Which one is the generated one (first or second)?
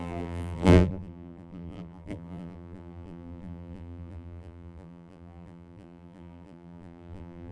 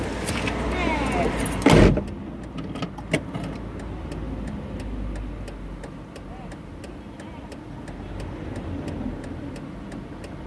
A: first